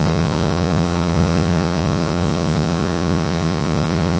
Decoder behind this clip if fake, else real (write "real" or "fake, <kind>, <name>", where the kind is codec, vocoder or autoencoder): fake, vocoder, Vocos